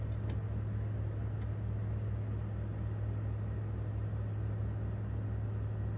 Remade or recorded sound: recorded